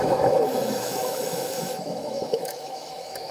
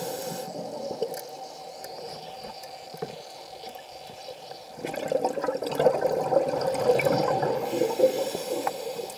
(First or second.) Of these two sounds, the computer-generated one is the first